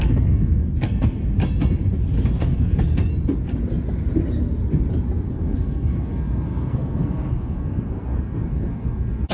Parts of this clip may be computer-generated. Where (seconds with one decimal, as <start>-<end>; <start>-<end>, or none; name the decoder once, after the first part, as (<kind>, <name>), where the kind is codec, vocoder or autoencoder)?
0.0-1.2 (codec, SNAC); 2.4-3.1; 5.3-9.3